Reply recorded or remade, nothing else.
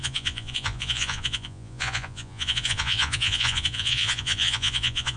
remade